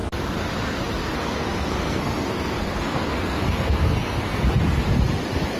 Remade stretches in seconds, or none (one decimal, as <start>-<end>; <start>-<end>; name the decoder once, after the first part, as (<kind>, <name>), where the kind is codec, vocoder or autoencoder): 1.0-4.4 (codec, SNAC)